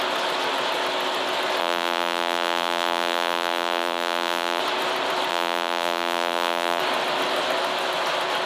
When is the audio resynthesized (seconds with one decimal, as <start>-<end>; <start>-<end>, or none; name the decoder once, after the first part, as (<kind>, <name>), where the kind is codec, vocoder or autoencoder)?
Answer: 1.6-4.6 (vocoder, BigVGAN v2); 5.3-6.8

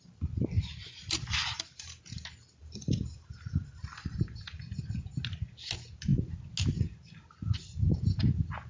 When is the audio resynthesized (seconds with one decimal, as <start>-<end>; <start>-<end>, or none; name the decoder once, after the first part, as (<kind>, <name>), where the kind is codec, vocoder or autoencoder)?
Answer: 1.4-2.0 (vocoder, BigVGAN v2); 2.6-4.6

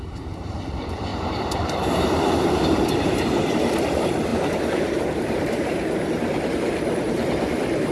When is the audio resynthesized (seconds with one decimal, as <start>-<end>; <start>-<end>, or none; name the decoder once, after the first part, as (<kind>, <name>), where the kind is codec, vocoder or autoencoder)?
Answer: 0.0-7.9 (vocoder, BigVGAN v2)